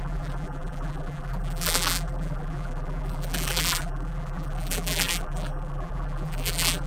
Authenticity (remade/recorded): remade